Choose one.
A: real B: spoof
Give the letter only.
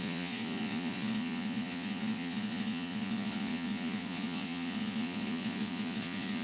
B